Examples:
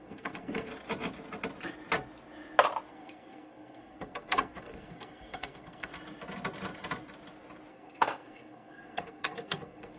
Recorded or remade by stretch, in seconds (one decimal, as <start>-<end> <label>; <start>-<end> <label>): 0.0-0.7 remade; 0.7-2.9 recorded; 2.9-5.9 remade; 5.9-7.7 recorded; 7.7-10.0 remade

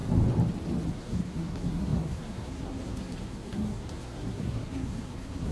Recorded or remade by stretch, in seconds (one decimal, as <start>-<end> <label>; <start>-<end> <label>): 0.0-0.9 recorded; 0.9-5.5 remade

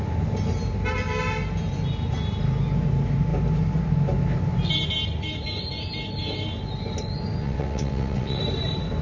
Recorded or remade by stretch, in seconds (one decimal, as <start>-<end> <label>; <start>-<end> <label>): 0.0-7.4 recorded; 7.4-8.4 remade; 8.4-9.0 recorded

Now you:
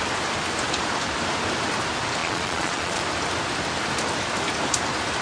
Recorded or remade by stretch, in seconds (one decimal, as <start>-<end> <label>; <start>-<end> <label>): 0.0-2.2 recorded; 2.2-3.0 remade; 3.0-5.2 recorded

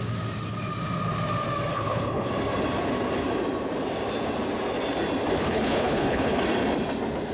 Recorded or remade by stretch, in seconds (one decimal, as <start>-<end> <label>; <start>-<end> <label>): 0.0-1.7 recorded; 1.7-2.3 remade; 2.3-5.4 recorded; 5.4-6.4 remade; 6.4-7.3 recorded

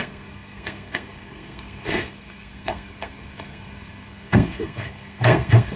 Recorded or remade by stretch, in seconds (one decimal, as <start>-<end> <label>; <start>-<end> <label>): 0.0-5.8 remade

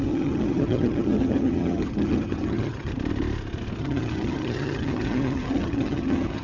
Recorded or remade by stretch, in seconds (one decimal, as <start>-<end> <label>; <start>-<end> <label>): 0.0-2.9 remade; 2.9-3.8 recorded; 3.8-6.4 remade

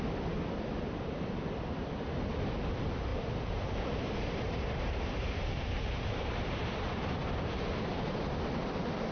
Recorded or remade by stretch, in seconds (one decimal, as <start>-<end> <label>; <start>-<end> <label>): 0.0-3.1 recorded; 3.1-7.5 remade; 7.5-9.1 recorded